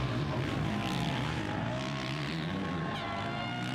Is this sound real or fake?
real